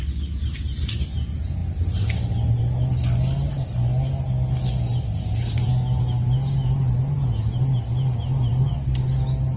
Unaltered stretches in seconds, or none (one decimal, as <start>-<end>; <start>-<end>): 0.0-4.9; 5.7-9.6